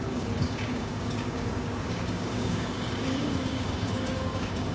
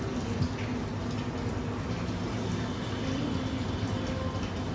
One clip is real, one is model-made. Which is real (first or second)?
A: second